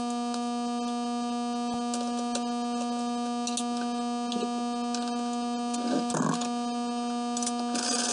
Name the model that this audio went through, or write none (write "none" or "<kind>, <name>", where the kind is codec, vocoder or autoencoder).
none